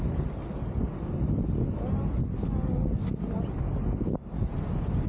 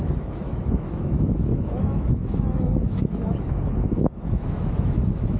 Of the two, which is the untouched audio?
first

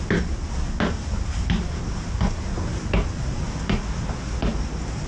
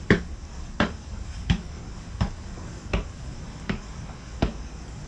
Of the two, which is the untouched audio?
first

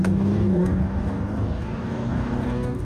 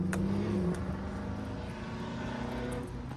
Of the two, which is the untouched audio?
second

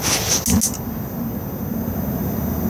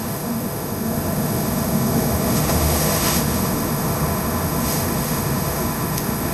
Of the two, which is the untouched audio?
first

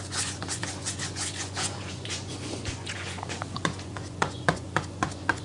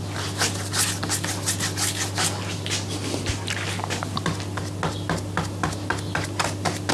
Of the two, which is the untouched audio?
second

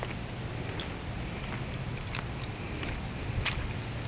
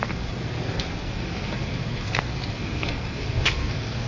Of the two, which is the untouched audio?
first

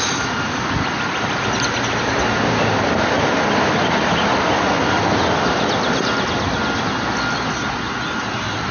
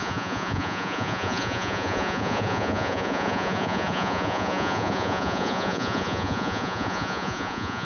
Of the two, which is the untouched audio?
first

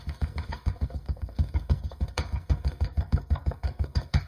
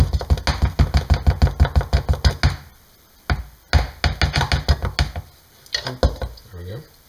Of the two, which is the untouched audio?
second